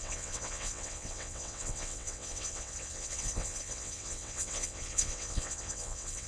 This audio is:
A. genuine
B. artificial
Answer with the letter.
B